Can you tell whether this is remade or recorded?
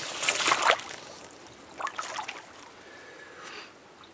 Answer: recorded